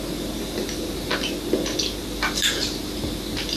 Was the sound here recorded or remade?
recorded